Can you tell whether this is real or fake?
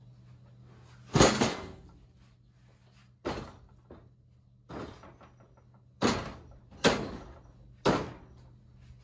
real